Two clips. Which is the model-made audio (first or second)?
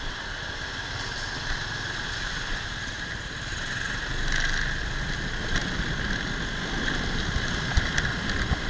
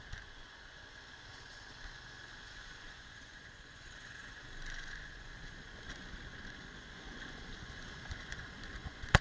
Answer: second